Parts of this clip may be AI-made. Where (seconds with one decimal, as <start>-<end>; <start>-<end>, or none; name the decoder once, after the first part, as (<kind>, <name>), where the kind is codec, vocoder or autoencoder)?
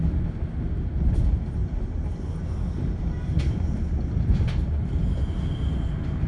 none